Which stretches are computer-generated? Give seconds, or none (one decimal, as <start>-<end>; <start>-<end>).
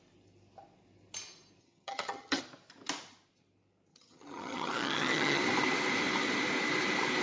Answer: 1.6-2.4; 3.9-5.4